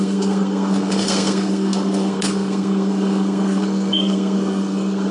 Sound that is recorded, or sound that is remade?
remade